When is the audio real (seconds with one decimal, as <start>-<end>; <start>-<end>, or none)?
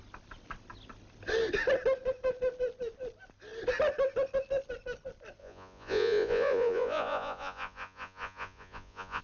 0.0-5.4